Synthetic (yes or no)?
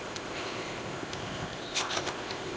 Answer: yes